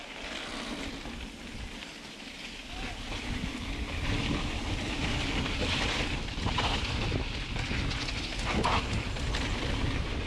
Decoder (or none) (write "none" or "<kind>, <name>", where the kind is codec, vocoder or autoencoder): none